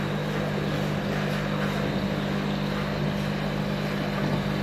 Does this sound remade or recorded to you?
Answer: recorded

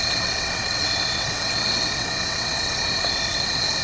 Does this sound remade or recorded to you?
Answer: remade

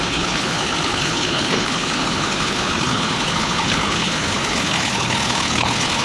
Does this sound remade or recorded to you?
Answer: remade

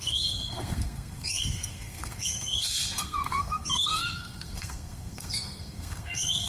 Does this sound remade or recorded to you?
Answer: remade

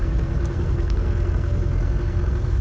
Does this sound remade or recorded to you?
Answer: remade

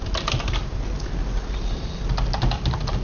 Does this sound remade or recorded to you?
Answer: recorded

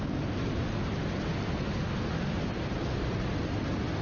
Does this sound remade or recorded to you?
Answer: recorded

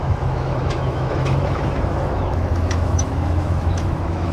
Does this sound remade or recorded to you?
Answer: remade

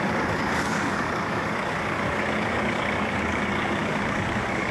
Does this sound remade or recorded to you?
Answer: remade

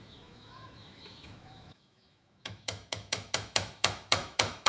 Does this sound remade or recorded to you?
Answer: remade